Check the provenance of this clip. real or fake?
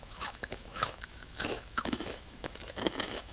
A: fake